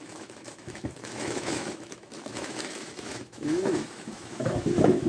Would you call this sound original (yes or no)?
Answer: no